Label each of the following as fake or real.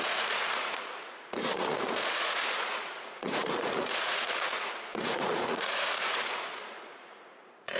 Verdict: fake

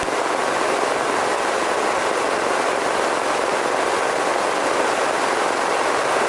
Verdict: real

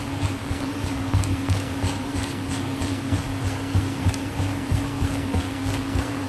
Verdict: fake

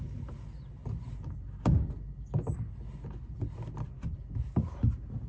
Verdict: real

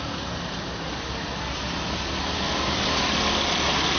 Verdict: real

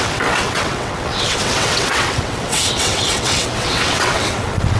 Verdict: fake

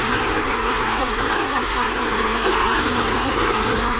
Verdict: fake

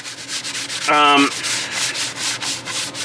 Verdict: real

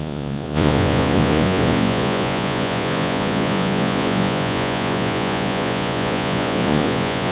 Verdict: fake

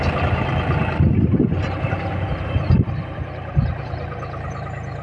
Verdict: real